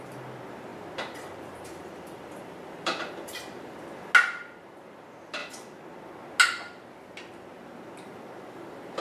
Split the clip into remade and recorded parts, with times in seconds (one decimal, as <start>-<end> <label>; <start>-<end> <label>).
0.0-0.7 recorded; 0.7-3.1 remade; 3.1-9.0 recorded